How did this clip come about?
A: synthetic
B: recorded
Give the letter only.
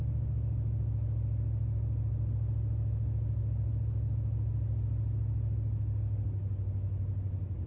B